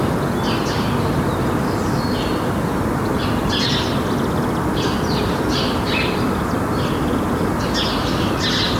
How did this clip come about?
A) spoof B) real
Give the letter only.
B